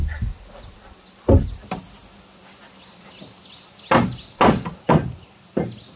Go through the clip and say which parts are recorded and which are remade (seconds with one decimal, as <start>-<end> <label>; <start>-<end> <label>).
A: 0.0-6.0 recorded